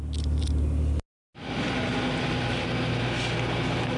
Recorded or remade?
recorded